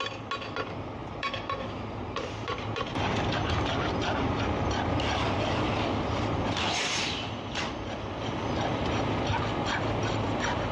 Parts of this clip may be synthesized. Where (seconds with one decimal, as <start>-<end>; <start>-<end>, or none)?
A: 1.0-3.0